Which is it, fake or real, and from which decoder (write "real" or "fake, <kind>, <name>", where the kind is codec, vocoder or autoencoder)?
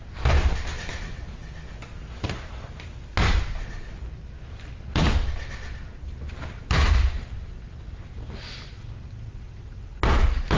real